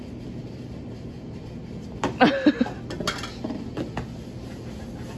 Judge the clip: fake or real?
real